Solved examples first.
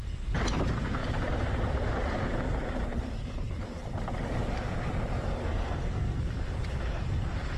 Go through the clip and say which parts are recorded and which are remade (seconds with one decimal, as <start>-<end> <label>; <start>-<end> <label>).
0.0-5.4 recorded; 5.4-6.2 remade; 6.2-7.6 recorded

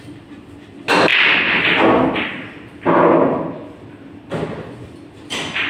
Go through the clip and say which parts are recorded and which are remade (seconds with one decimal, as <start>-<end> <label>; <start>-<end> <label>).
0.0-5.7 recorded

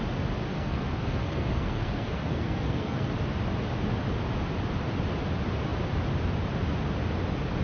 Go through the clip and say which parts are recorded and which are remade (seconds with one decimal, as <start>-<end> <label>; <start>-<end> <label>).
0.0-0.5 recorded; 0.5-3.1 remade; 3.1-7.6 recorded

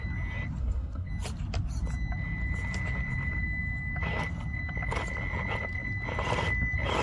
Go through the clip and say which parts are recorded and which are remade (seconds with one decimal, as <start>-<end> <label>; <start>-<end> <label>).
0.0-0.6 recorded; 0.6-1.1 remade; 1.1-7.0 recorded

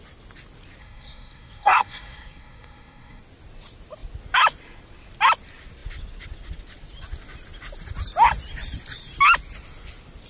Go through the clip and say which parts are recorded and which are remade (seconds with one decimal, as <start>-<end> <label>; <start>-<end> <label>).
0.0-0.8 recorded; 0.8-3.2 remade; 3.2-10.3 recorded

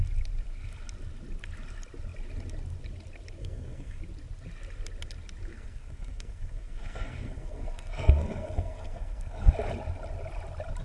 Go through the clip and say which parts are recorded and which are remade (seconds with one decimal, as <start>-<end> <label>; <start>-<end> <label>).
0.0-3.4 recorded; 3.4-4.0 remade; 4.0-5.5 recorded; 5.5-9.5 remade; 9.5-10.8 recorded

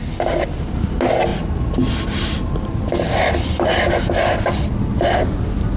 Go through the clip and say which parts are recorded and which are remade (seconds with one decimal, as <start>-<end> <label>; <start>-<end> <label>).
0.0-5.8 recorded

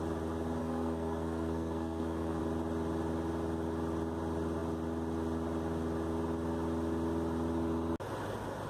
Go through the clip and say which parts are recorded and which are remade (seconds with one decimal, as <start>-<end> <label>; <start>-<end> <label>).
0.0-0.6 recorded; 0.6-2.4 remade; 2.4-8.7 recorded